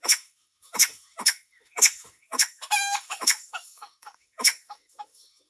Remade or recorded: remade